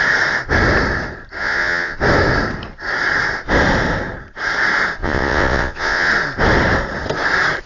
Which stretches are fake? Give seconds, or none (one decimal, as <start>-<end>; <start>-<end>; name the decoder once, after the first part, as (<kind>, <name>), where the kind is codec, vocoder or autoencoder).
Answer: 1.4-2.0 (vocoder, Vocos); 5.0-6.1